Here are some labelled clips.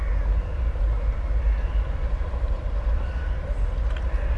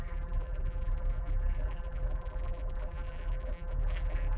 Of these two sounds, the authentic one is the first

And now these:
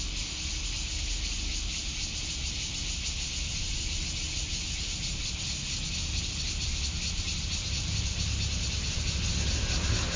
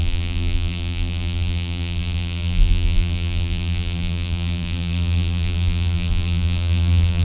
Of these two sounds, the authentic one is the first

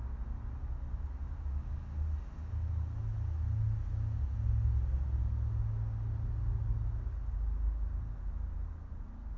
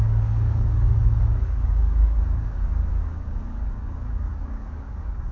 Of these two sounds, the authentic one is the first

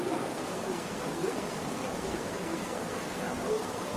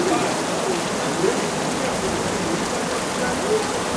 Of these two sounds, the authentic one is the second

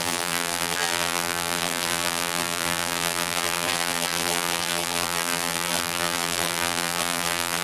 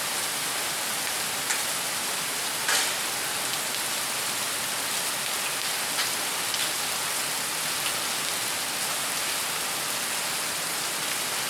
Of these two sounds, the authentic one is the second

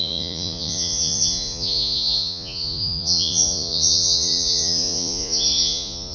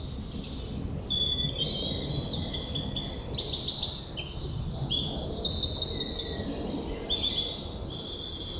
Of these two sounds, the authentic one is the second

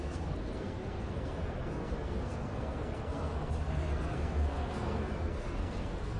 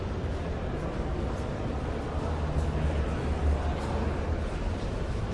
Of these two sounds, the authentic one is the second